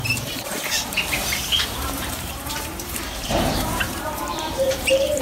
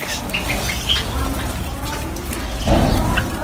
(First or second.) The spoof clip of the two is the first